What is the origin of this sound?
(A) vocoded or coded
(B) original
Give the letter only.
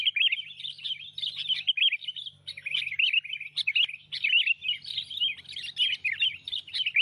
B